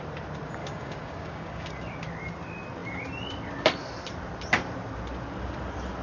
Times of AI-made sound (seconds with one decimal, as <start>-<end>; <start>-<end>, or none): 0.6-1.7